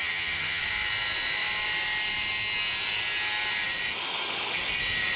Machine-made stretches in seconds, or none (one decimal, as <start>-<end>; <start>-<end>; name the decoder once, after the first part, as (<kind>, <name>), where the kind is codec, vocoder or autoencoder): 0.0-0.6 (vocoder, HiFi-GAN)